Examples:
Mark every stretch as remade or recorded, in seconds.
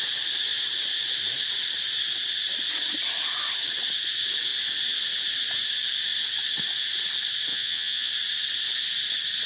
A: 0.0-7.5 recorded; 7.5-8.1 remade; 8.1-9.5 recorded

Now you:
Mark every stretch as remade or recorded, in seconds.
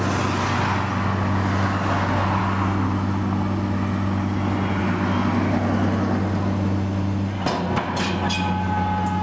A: 0.0-9.2 recorded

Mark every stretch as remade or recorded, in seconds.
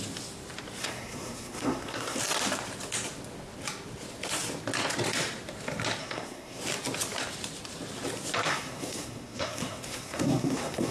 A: 0.0-0.8 recorded; 0.8-2.2 remade; 2.2-6.0 recorded; 6.0-6.6 remade; 6.6-8.5 recorded; 8.5-10.9 remade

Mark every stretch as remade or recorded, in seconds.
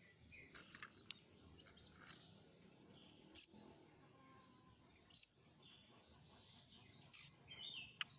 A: 0.0-8.2 recorded